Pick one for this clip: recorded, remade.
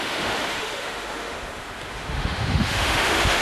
remade